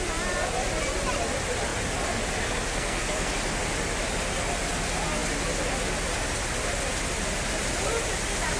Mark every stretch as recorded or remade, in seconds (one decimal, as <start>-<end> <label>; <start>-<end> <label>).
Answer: 0.0-2.7 recorded; 2.7-3.3 remade; 3.3-8.6 recorded